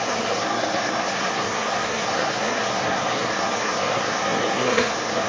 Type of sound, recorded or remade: remade